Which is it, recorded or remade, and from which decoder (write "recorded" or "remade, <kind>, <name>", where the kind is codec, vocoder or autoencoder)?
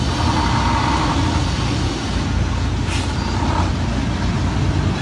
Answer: recorded